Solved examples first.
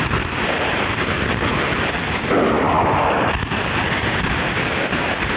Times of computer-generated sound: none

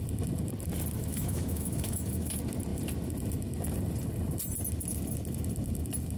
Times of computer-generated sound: 1.0-2.3 (autoencoder, DAC-VAE)

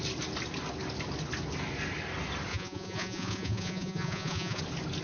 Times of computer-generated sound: 2.5-4.6 (vocoder, Vocos)

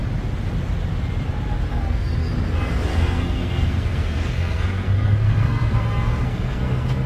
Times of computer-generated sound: 1.7-2.3 (codec, SNAC); 2.9-7.1

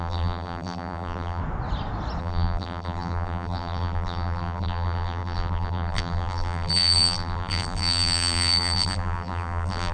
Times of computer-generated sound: 0.0-1.4 (vocoder, BigVGAN v2); 2.2-9.9